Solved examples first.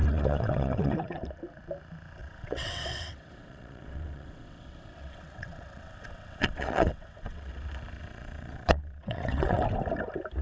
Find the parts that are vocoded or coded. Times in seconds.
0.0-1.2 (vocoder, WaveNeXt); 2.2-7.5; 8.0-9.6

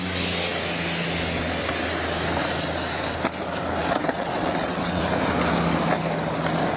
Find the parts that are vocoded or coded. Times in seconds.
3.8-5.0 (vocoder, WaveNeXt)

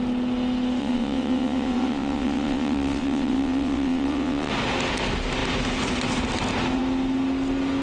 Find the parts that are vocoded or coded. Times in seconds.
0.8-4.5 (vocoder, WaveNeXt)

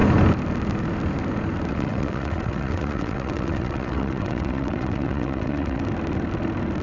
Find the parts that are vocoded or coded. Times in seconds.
1.7-5.8 (vocoder, WaveNeXt)

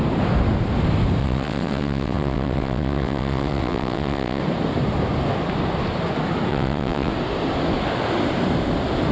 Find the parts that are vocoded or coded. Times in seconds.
1.2-4.4 (vocoder, WaveNeXt); 6.5-7.1